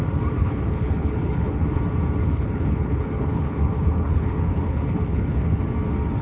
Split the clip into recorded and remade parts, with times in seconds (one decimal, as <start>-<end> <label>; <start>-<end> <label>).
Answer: 0.0-0.4 recorded; 0.4-1.8 remade; 1.8-2.2 recorded; 2.2-5.6 remade; 5.6-6.2 recorded